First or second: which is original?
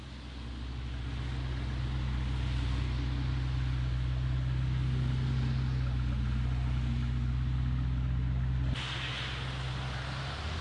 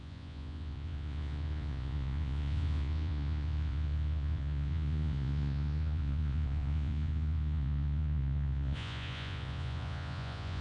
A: first